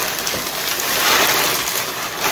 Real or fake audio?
real